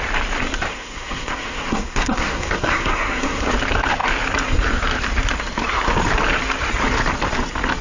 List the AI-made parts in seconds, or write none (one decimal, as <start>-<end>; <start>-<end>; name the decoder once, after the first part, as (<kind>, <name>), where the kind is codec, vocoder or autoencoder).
0.7-3.5 (codec, SNAC)